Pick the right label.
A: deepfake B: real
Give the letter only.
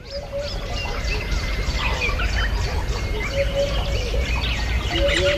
B